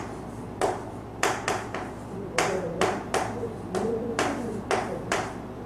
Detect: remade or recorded remade